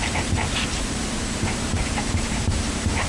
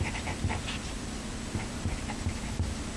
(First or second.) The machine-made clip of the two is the first